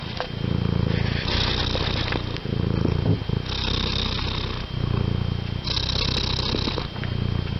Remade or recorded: recorded